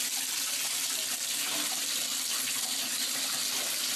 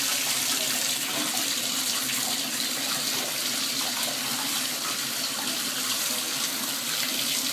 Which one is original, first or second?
first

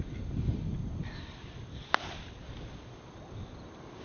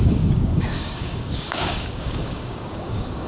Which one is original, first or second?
first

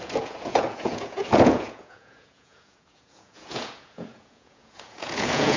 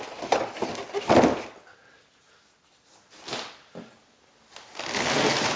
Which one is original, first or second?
second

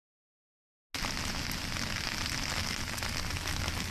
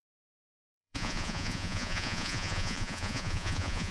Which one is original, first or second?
first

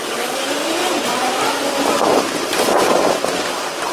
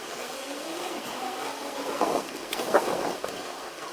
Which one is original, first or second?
first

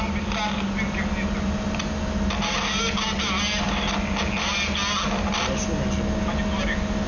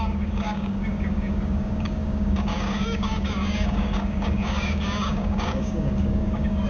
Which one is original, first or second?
first